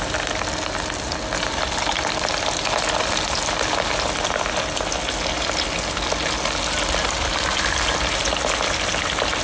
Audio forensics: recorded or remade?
recorded